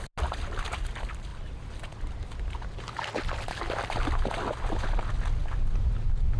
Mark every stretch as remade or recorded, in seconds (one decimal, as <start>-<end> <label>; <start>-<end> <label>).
0.0-6.4 recorded